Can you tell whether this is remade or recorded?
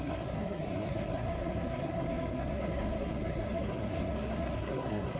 remade